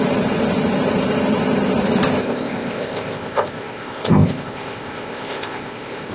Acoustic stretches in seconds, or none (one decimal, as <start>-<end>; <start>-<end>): 0.0-2.2